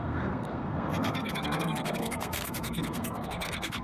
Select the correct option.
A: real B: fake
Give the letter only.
B